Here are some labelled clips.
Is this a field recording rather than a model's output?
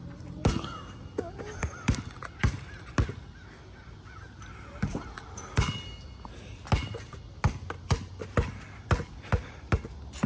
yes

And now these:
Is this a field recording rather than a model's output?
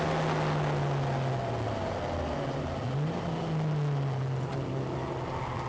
yes